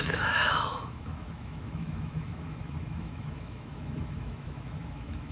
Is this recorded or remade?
remade